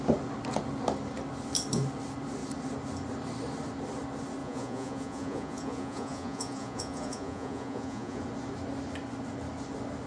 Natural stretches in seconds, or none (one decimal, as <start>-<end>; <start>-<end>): 0.0-4.4; 8.2-10.1